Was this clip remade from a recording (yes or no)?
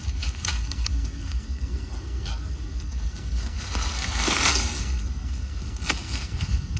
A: yes